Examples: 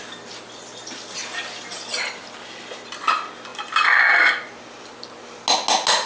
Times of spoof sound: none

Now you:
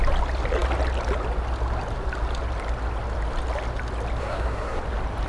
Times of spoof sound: 4.2-4.8 (codec, SNAC)

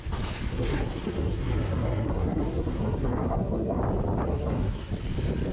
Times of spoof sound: 0.5-3.8 (codec, SNAC); 4.3-4.9